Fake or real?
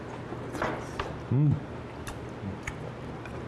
real